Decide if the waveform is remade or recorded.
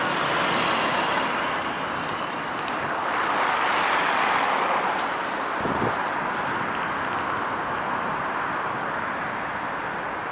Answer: recorded